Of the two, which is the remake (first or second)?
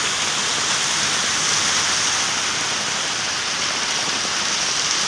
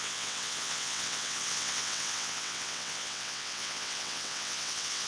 second